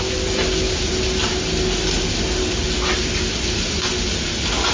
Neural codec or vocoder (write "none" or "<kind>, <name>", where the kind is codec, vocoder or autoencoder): none